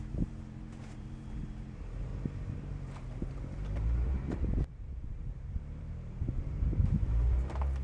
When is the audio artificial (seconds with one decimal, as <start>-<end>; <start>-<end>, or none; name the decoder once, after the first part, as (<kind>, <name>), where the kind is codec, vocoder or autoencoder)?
0.0-2.1 (vocoder, BigVGAN v2); 2.7-7.8